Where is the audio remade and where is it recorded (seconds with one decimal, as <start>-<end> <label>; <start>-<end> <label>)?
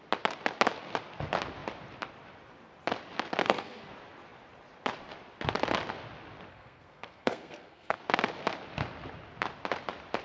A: 0.0-3.4 recorded; 3.4-3.9 remade; 3.9-6.5 recorded; 6.5-8.0 remade; 8.0-10.2 recorded